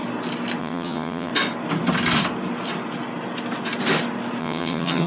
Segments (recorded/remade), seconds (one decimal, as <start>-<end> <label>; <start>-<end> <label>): 0.0-0.6 recorded; 0.6-1.3 remade; 1.3-4.4 recorded; 4.4-5.1 remade